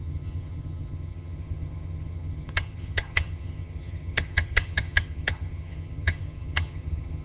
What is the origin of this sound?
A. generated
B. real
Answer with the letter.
A